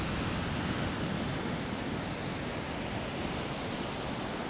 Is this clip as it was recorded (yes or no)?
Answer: yes